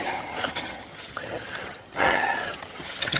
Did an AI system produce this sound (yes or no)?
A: yes